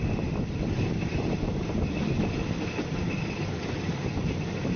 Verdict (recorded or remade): recorded